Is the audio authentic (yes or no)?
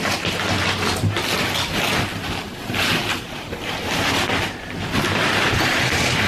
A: yes